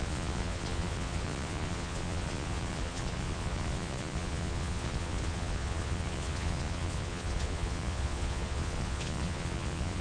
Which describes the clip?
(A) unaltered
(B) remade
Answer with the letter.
B